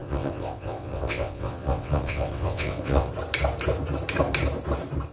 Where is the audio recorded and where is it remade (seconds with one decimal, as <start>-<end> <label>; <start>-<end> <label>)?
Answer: 0.0-3.1 remade; 3.1-5.1 recorded